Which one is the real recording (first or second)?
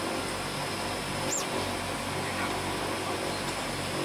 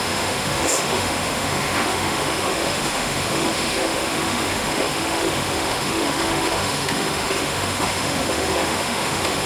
first